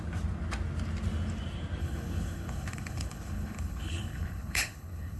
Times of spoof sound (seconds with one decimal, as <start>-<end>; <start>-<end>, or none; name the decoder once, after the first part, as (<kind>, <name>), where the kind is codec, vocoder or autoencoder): 1.8-5.2 (codec, HILCodec)